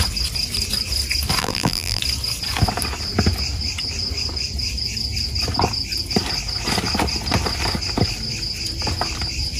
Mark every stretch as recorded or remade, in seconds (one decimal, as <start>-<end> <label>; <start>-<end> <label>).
0.0-1.4 recorded; 1.4-2.0 remade; 2.0-9.6 recorded